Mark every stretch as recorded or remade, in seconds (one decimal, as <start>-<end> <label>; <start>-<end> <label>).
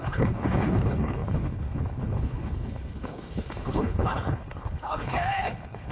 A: 0.0-5.9 remade